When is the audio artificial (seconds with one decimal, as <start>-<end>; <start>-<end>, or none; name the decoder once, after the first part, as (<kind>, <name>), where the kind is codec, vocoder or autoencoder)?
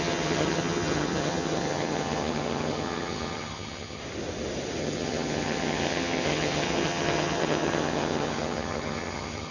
0.0-4.0 (vocoder, HiFi-GAN); 4.8-9.5